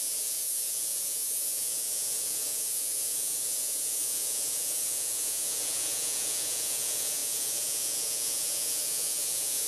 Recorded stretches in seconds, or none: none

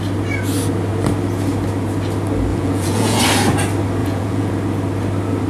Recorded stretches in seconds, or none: 0.0-2.5; 3.2-4.0; 4.5-5.5

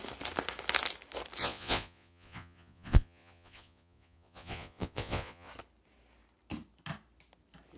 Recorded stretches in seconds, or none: 0.0-1.4; 5.5-7.8

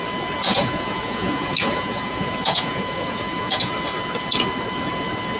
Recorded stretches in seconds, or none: 0.0-0.5; 3.7-5.4

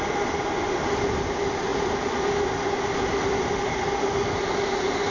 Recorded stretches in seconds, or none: 0.0-5.1

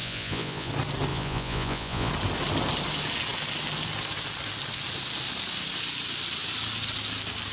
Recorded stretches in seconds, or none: 0.7-1.1; 2.1-7.5